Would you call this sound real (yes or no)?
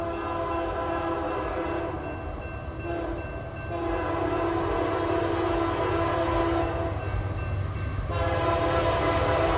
yes